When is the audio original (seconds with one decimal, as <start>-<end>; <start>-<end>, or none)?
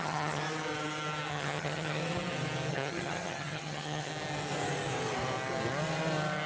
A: 0.4-1.3; 2.0-2.7; 4.1-6.5